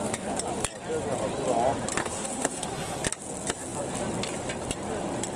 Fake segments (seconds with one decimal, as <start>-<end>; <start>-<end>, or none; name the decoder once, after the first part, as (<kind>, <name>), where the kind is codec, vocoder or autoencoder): 2.0-3.0 (codec, SNAC)